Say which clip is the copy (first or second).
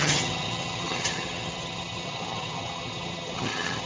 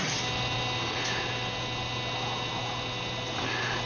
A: first